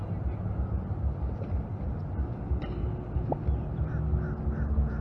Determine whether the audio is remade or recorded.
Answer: recorded